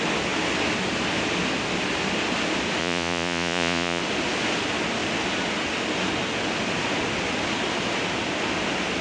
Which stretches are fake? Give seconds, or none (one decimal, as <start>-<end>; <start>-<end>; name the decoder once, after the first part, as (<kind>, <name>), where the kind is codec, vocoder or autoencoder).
2.8-4.0 (vocoder, Vocos)